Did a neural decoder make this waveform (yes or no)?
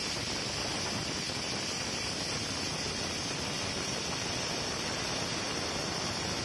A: no